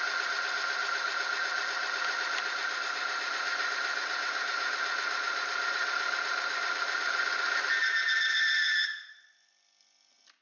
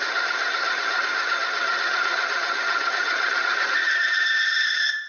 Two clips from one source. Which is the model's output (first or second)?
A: second